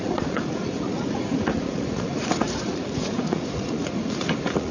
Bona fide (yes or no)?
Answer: no